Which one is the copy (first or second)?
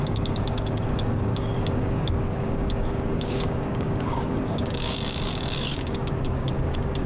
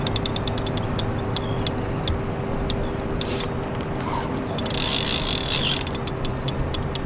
first